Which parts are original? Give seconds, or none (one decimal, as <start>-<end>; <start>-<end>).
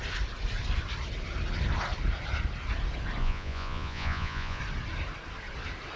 0.0-3.2; 4.6-6.0